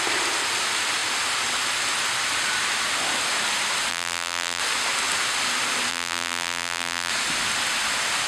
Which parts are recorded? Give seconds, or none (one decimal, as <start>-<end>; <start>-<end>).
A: 0.0-3.9; 4.6-5.9; 7.1-8.3